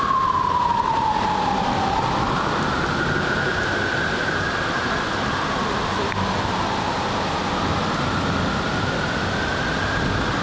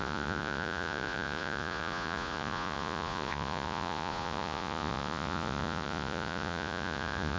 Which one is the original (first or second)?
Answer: first